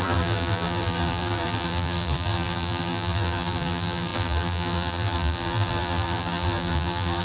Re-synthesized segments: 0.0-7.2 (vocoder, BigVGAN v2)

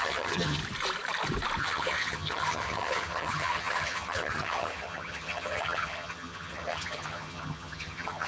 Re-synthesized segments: 0.0-0.6 (vocoder, HiFi-GAN); 1.6-8.3

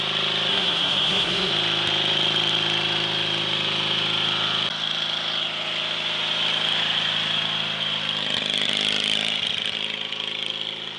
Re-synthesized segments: 0.5-1.5 (codec, SNAC)

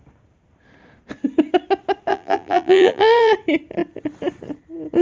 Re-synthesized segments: 2.1-3.3 (vocoder, BigVGAN v2)

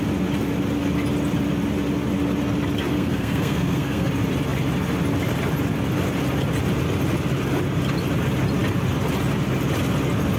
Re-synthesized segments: 2.9-4.1 (codec, SNAC)

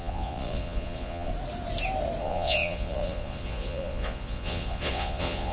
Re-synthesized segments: 0.0-1.3 (vocoder, Vocos); 2.2-5.5

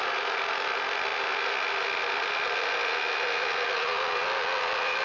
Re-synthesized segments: none

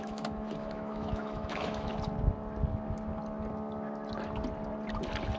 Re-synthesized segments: 0.0-1.9 (autoencoder, DAC-VAE)